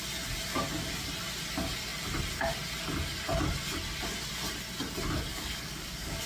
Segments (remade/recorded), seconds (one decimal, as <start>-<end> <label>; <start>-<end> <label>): 0.0-5.3 recorded; 5.3-6.3 remade